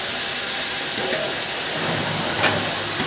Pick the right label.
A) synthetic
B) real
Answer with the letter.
B